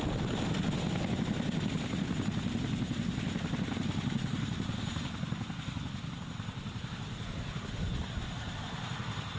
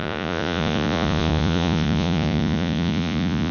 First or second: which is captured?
first